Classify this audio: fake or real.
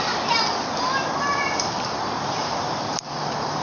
fake